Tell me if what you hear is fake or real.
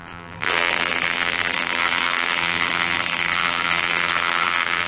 fake